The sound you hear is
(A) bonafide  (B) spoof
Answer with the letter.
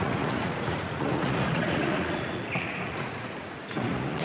B